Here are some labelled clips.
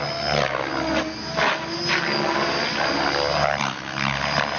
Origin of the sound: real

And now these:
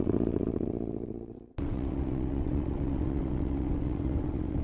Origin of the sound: fake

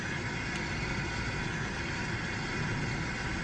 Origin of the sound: real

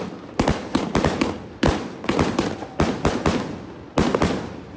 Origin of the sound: real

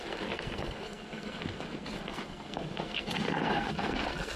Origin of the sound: fake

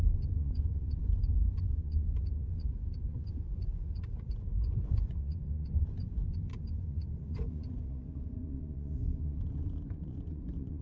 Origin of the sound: fake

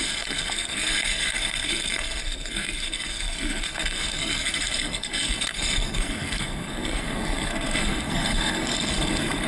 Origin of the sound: fake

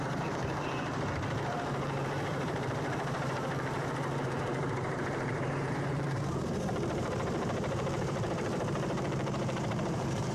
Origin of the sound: fake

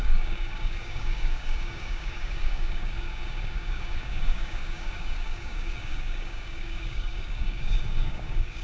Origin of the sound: fake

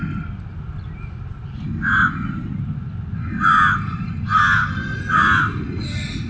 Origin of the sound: real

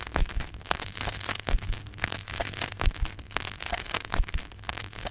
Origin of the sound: fake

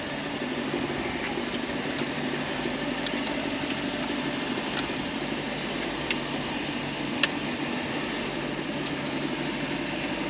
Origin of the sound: real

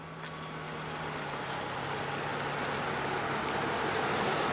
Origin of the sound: real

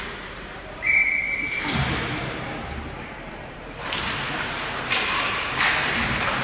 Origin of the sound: fake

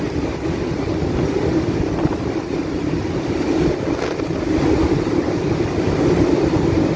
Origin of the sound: real